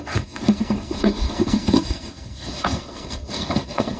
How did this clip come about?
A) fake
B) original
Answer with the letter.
A